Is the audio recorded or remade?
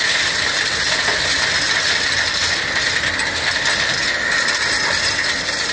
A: recorded